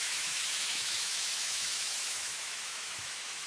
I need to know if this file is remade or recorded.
remade